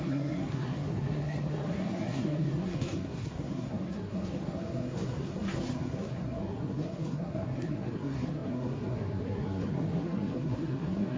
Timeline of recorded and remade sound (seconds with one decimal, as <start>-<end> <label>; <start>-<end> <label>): 0.0-11.2 remade

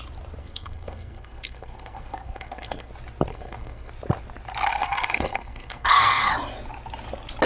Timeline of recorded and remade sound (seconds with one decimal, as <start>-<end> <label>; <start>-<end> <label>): 0.0-0.4 recorded; 0.4-2.9 remade; 2.9-3.3 recorded; 3.3-3.9 remade; 3.9-4.7 recorded; 4.7-6.3 remade; 6.3-7.5 recorded